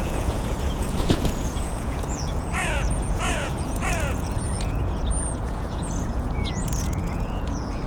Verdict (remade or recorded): remade